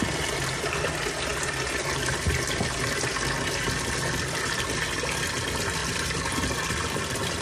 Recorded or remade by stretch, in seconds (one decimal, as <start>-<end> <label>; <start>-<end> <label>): 0.0-1.3 recorded; 1.3-3.1 remade; 3.1-7.4 recorded